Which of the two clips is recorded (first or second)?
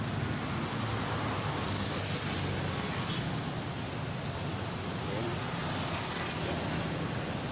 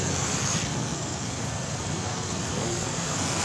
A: first